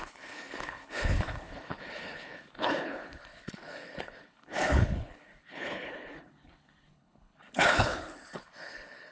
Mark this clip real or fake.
fake